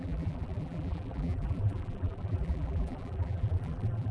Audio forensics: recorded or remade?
remade